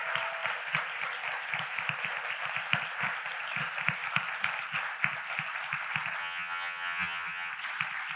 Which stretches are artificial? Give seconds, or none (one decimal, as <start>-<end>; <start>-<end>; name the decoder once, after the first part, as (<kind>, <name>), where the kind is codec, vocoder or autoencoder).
6.2-7.5 (vocoder, HiFi-GAN)